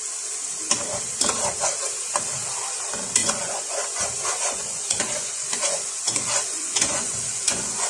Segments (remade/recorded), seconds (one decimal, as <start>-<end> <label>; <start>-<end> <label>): 0.0-3.2 recorded; 3.2-7.9 remade